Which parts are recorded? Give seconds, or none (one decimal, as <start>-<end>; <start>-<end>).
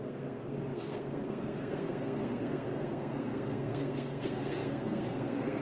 none